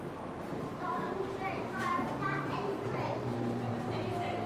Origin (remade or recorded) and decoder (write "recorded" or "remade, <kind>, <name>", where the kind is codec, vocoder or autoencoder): remade, vocoder, BigVGAN v2